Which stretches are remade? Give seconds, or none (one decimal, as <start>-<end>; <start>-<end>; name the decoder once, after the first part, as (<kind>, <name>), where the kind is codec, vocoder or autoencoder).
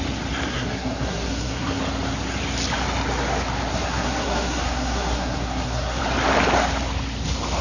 0.5-1.8 (codec, SNAC); 3.7-6.0